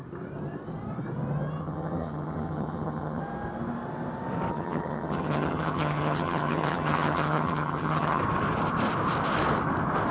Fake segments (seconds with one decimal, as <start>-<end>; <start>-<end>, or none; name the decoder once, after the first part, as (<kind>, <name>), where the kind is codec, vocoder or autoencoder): 1.6-3.2 (vocoder, HiFi-GAN); 4.5-8.2